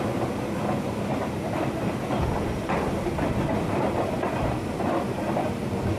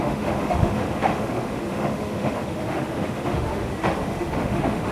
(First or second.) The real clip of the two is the first